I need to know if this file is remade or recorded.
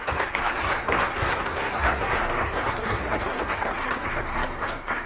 remade